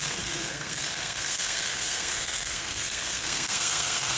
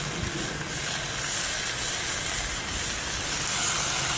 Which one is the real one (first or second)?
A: second